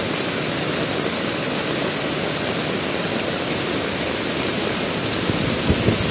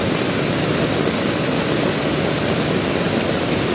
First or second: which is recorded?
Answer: second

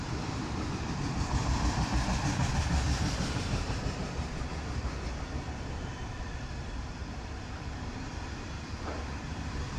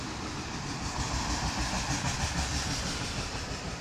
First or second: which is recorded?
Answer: second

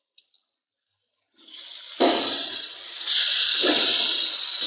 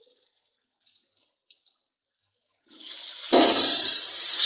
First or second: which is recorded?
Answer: second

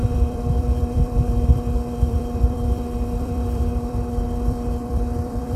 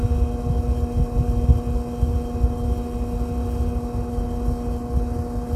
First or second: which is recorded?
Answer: second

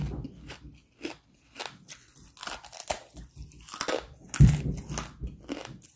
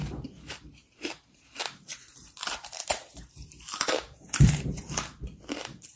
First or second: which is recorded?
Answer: first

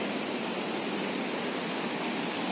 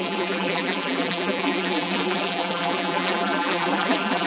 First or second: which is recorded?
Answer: first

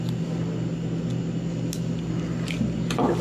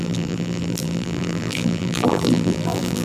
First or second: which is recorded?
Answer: first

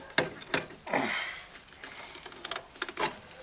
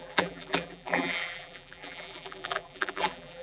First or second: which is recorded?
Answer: first